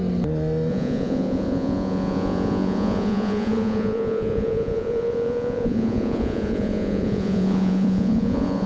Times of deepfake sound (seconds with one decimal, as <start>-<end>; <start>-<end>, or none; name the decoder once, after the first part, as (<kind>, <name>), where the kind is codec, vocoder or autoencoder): 0.7-8.7 (vocoder, Vocos)